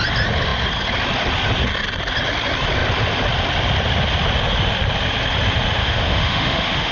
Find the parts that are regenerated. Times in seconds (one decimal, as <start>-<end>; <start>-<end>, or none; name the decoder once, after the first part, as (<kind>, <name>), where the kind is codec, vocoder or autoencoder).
5.8-6.9 (autoencoder, DAC-VAE)